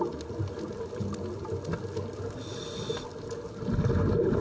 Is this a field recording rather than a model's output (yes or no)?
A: yes